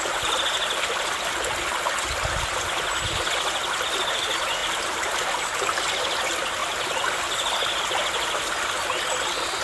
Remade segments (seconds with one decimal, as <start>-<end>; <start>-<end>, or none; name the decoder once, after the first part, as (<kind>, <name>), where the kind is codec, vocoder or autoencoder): 4.6-5.8 (vocoder, BigVGAN v2)